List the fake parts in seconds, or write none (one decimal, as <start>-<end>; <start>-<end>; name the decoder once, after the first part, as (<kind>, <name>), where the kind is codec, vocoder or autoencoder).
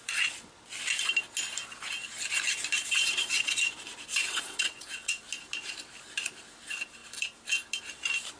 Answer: 2.8-3.6 (vocoder, WaveNeXt); 4.2-5.2